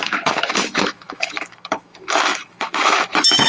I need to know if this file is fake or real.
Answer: fake